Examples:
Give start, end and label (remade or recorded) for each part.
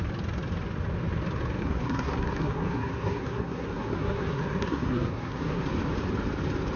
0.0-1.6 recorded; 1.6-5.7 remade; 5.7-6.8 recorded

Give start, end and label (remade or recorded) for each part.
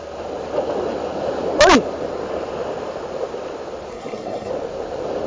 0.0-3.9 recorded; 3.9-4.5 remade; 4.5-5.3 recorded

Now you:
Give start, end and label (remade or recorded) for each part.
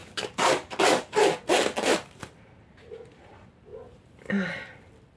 0.0-1.2 remade; 1.2-5.2 recorded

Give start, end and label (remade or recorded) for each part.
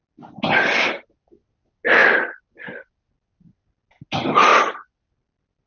0.0-5.7 recorded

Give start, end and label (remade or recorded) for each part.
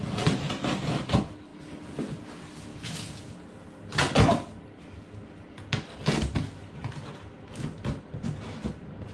0.0-2.7 recorded; 2.7-3.4 remade; 3.4-9.1 recorded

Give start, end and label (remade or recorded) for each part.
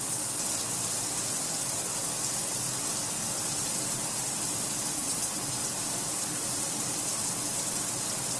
0.0-4.9 recorded; 4.9-5.5 remade; 5.5-8.4 recorded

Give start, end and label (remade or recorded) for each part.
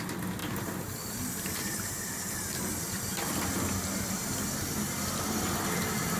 0.0-6.2 recorded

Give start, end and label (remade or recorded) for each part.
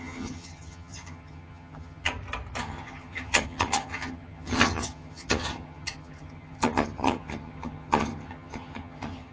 0.0-2.1 remade; 2.1-2.6 recorded; 2.6-9.3 remade